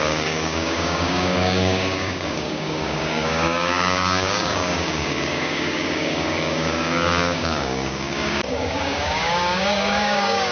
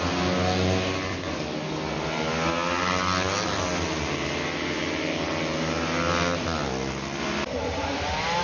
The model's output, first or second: first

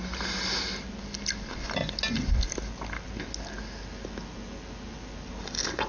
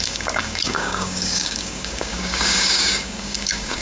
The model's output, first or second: second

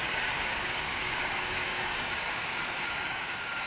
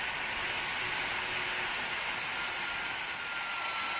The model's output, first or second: first